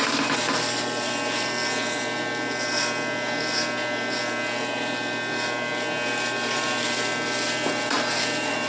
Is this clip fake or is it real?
real